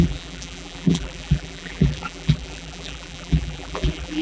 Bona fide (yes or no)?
no